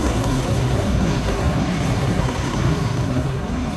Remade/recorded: remade